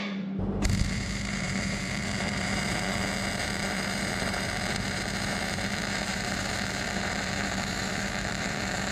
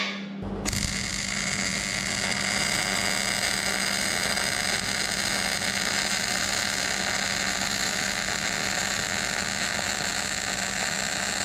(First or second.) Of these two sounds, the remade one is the first